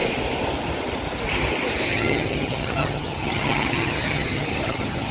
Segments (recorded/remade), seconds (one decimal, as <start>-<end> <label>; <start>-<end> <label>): 0.0-1.9 recorded; 1.9-5.1 remade